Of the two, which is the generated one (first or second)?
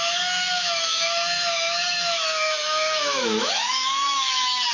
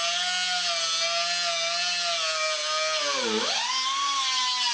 first